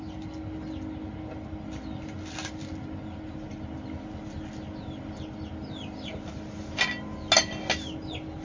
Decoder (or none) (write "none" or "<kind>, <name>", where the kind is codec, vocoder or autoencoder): none